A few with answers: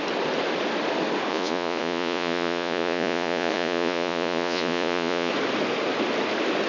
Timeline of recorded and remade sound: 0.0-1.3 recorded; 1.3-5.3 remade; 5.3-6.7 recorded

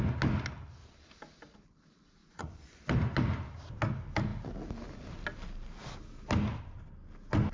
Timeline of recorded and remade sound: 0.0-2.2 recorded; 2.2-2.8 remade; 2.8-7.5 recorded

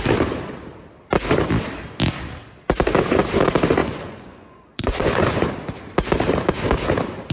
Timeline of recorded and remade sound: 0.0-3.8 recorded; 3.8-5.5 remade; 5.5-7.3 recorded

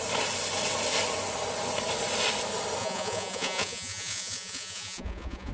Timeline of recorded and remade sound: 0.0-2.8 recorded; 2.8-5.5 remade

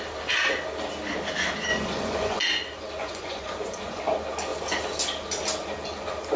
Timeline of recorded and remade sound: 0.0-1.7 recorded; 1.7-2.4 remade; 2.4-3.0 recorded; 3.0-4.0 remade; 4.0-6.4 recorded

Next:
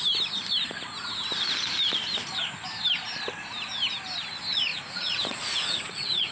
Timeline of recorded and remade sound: 0.0-4.7 recorded; 4.7-6.3 remade